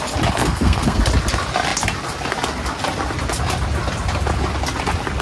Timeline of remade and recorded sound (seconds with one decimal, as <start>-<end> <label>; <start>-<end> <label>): 0.0-0.4 recorded; 0.4-1.0 remade; 1.0-5.2 recorded